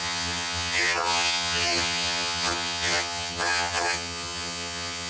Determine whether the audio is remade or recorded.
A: remade